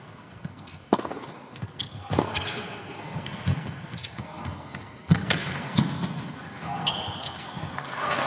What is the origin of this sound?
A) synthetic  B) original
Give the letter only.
A